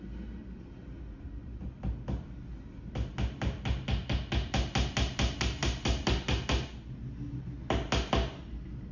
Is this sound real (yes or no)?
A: yes